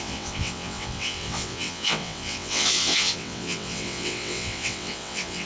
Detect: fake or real fake